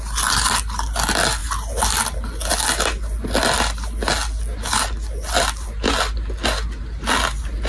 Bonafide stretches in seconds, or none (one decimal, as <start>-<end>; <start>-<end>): 0.0-7.7